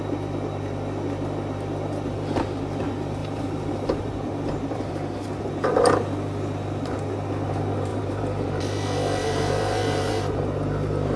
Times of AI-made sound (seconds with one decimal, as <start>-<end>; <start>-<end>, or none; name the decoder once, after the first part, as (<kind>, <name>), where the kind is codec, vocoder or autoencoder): 3.2-4.9 (vocoder, BigVGAN v2); 7.9-8.6; 9.2-10.1